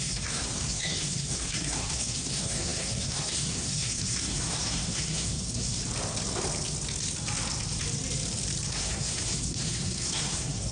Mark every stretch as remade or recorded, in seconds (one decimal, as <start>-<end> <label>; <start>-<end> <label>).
0.0-5.8 remade; 5.8-8.7 recorded; 8.7-10.7 remade